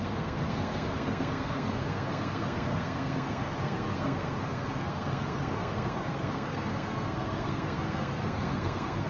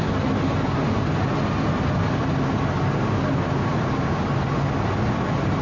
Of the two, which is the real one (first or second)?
second